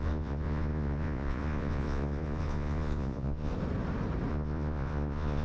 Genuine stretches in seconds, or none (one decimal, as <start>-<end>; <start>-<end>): 3.5-4.3